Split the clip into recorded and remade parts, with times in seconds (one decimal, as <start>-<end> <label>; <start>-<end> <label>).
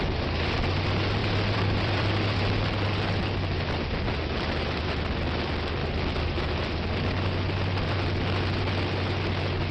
0.0-1.2 recorded; 1.2-2.4 remade; 2.4-9.7 recorded